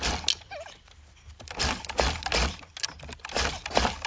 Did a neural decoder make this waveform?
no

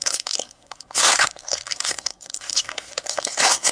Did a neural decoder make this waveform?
yes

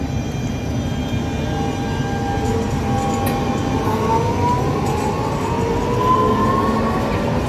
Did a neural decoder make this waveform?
no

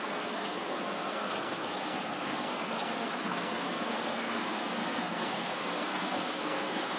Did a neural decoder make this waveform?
yes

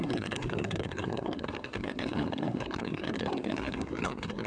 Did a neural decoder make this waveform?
yes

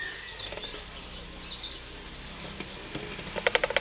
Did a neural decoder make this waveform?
no